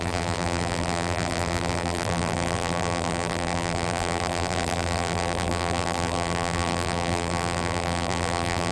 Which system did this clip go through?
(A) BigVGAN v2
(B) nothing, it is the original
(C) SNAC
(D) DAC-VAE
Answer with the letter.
A